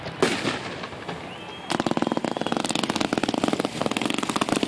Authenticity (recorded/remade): recorded